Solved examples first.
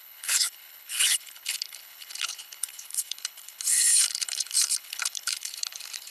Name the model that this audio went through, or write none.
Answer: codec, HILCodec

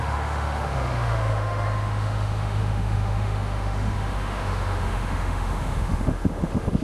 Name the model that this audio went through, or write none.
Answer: autoencoder, DAC-VAE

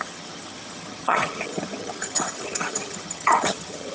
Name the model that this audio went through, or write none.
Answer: vocoder, HiFi-GAN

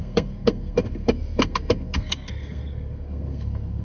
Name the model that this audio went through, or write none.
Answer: codec, SNAC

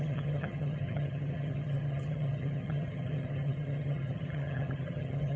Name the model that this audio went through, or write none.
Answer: vocoder, HiFi-GAN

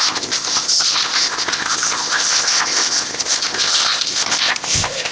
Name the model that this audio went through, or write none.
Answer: codec, ZipCodec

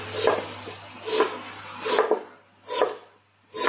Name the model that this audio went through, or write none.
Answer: none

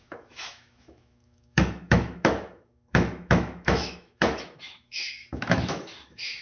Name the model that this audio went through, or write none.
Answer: autoencoder, DAC-VAE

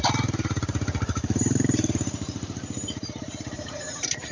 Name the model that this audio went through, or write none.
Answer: vocoder, BigVGAN v2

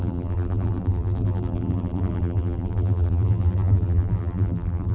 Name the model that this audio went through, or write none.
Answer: vocoder, BigVGAN v2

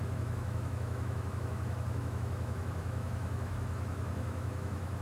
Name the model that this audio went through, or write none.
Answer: autoencoder, DAC-VAE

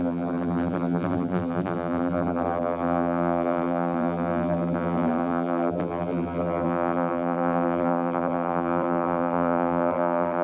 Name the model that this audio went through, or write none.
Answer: vocoder, BigVGAN v2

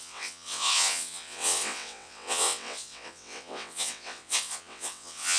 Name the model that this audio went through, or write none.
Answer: vocoder, WaveNeXt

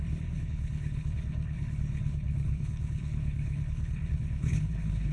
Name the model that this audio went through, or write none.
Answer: codec, HILCodec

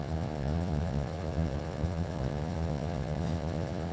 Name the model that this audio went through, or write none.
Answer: vocoder, Vocos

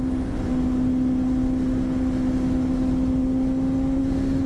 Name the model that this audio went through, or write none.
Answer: none